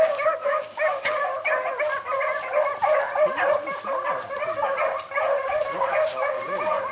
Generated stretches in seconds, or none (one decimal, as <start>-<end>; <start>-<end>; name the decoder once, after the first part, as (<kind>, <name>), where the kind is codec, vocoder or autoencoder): 0.0-1.3 (codec, DAC); 5.4-6.9